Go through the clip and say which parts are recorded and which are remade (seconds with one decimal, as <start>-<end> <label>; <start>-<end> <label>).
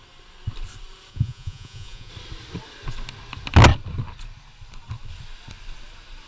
0.0-1.1 recorded; 1.1-2.1 remade; 2.1-6.3 recorded